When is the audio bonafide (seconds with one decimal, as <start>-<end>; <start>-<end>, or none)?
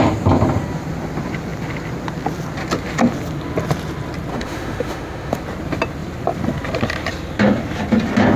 0.0-4.3; 5.4-8.4